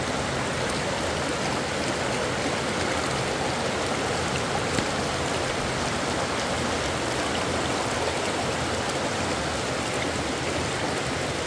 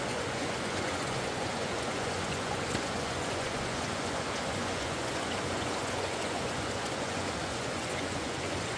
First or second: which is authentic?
first